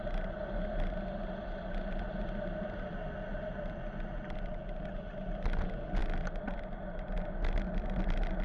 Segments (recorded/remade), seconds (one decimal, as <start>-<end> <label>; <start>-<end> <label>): 0.0-8.4 recorded